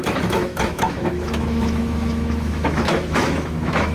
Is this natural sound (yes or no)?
no